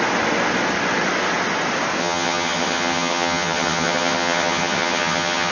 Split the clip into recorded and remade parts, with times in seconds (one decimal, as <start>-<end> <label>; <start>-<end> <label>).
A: 0.0-2.0 recorded; 2.0-5.5 remade